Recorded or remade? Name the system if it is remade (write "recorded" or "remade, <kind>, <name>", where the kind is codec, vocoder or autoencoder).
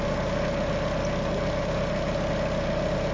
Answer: recorded